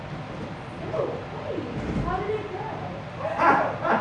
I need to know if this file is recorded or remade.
recorded